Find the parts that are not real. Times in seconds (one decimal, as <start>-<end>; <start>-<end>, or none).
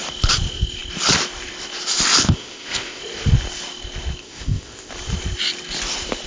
2.2-3.0; 4.2-4.9